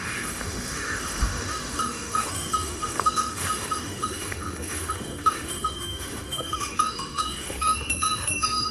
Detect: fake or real fake